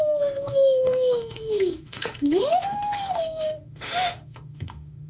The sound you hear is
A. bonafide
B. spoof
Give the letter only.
B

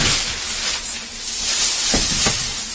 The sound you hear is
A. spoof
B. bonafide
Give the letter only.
B